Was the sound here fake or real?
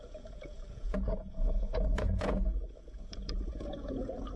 fake